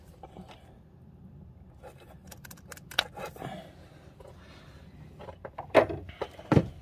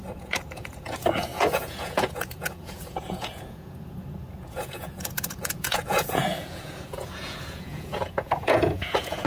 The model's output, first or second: second